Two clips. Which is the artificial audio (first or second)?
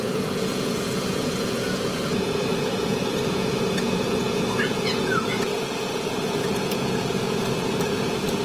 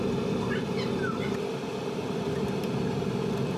first